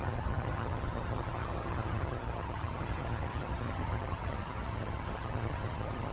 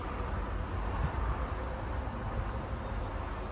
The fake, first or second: first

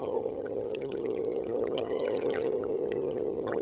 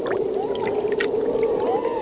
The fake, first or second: first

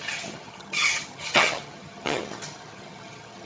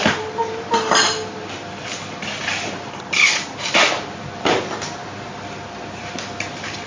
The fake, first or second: first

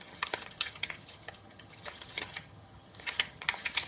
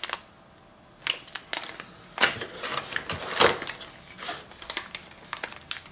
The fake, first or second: first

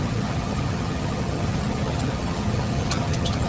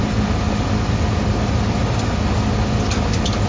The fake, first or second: first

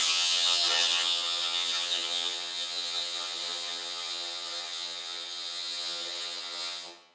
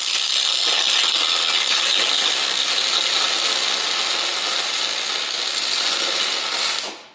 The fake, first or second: first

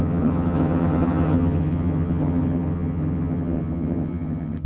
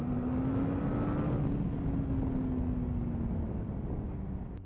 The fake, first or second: first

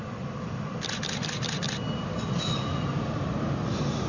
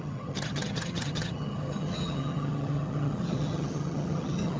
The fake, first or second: second